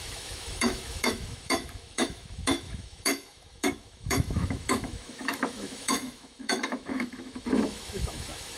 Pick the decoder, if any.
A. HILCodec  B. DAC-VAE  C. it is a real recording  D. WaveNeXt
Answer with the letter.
B